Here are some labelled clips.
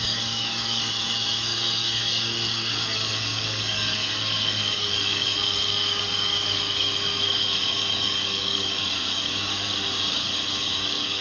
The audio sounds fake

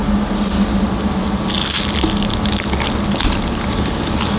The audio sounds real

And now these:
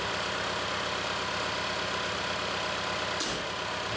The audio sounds real